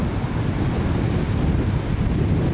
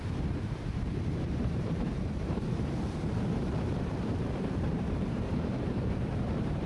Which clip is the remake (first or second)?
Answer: second